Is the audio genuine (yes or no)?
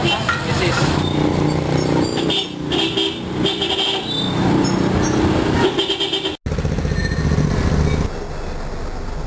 yes